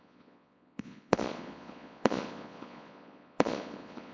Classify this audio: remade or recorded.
remade